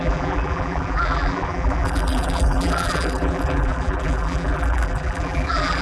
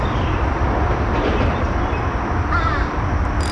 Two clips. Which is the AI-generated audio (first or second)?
first